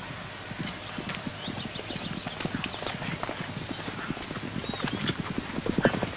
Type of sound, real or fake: real